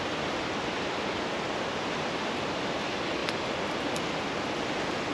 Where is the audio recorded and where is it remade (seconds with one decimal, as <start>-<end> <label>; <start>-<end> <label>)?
0.0-5.1 recorded